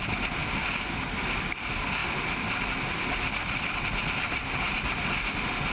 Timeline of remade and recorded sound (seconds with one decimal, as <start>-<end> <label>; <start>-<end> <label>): 0.0-0.4 recorded; 0.4-1.0 remade; 1.0-2.0 recorded; 2.0-4.1 remade; 4.1-5.7 recorded